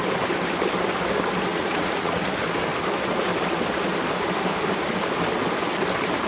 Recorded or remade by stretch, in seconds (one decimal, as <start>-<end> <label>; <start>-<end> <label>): 0.0-1.5 recorded; 1.5-2.2 remade; 2.2-6.3 recorded

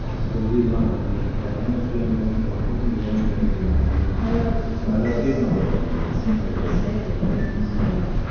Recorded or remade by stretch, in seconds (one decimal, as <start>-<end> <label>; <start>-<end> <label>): 0.0-8.3 recorded

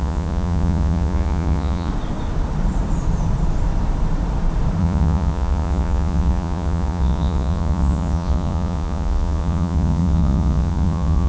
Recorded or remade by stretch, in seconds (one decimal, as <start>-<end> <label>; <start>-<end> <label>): 0.0-1.9 remade; 1.9-4.8 recorded; 4.8-11.3 remade

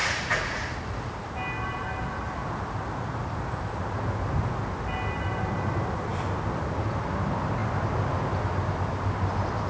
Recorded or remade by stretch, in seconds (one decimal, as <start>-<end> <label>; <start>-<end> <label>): 0.0-0.7 remade; 0.7-9.7 recorded

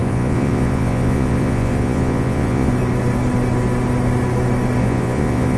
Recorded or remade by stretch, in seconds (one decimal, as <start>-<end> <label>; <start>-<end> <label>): 0.0-2.7 remade; 2.7-4.8 recorded; 4.8-5.6 remade

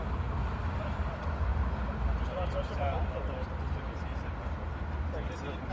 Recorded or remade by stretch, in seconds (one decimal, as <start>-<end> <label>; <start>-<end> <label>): 0.0-5.7 recorded

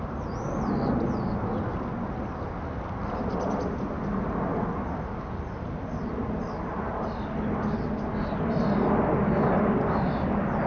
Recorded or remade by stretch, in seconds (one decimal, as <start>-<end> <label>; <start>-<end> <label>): 0.0-10.7 recorded